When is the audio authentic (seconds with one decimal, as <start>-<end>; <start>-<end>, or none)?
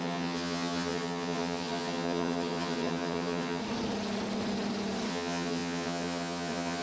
3.6-5.1